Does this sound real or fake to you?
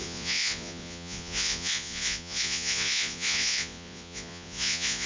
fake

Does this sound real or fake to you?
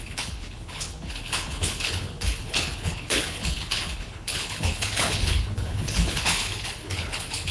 fake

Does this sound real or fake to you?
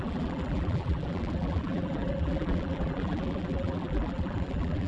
fake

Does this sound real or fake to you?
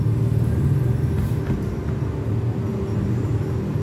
real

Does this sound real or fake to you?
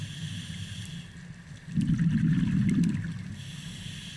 real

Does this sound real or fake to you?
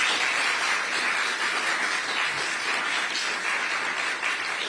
real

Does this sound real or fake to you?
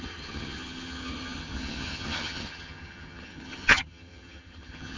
fake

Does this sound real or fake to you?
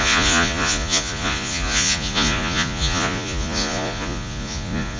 fake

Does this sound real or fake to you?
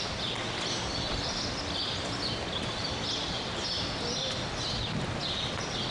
real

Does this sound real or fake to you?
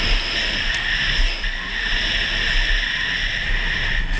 real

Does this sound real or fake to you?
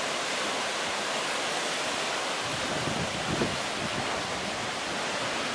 real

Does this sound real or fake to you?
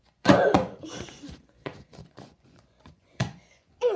fake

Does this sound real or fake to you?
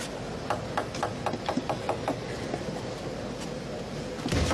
real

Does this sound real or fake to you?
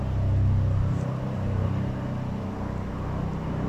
real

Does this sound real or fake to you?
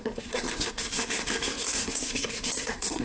fake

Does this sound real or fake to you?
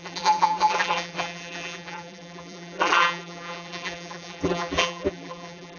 fake